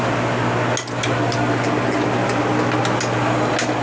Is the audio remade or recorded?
recorded